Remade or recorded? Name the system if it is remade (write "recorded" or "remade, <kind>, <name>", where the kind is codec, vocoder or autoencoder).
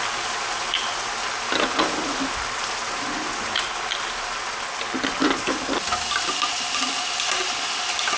recorded